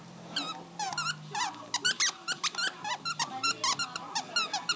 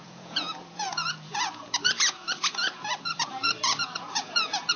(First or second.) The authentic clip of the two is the first